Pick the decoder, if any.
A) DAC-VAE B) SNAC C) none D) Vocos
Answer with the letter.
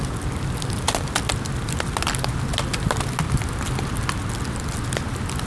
C